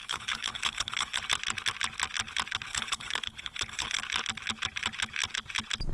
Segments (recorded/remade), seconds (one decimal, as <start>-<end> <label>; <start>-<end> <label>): 0.0-1.2 remade; 1.2-2.7 recorded; 2.7-4.0 remade; 4.0-5.9 recorded